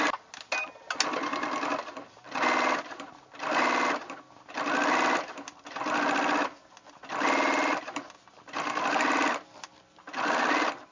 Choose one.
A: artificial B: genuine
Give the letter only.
B